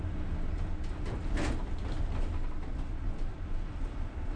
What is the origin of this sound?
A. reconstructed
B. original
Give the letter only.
B